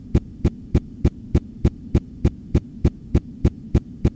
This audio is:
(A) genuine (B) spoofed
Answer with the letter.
B